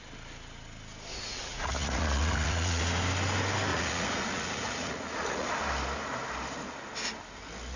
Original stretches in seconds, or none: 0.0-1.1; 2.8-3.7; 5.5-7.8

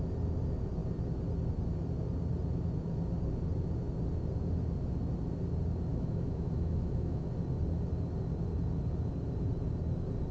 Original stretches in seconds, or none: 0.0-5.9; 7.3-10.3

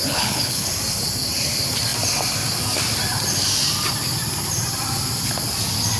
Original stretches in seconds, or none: 0.7-6.0